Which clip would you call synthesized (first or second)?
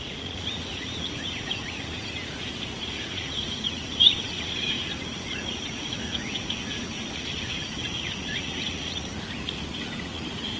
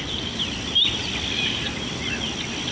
first